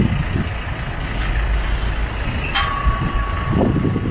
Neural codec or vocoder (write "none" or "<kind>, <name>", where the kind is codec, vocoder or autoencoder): none